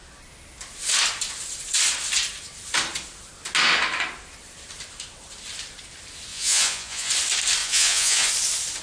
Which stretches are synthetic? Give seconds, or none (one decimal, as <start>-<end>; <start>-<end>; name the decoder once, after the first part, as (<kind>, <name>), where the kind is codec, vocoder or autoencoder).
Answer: 6.3-7.1 (vocoder, Vocos); 7.6-8.3